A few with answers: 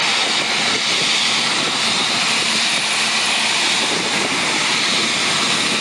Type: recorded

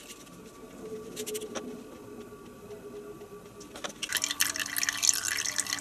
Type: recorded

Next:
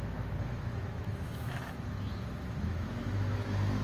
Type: remade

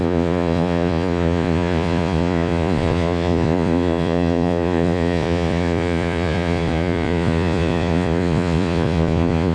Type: remade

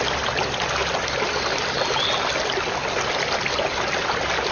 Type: recorded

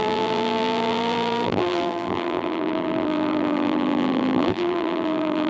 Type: remade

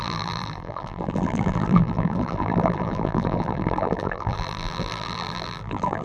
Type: remade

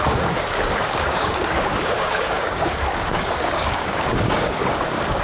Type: remade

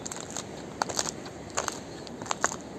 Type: recorded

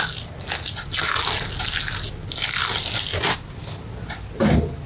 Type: recorded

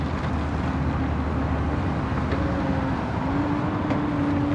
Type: recorded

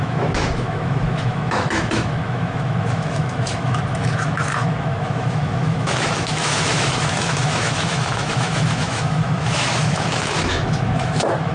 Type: remade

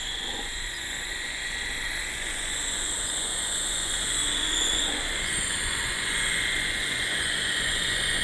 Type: remade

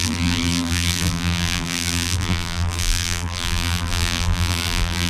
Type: remade